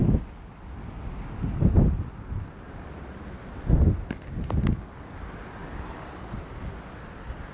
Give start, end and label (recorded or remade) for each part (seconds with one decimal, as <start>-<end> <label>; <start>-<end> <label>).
0.0-7.5 recorded